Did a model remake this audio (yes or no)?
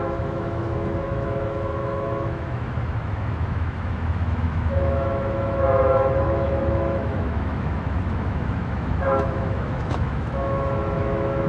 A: yes